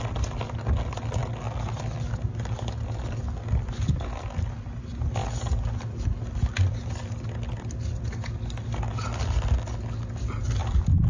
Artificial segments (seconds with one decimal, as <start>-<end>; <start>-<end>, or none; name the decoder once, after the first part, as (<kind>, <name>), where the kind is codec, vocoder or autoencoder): none